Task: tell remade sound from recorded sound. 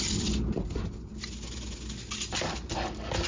recorded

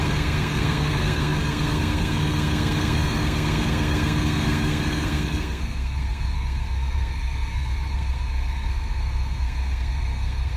remade